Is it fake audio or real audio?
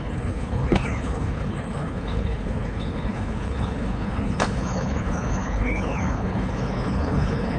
fake